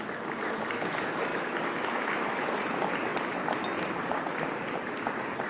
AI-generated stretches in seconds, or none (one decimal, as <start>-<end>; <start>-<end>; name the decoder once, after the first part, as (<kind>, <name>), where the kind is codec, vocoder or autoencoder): 1.3-2.4 (autoencoder, DAC-VAE)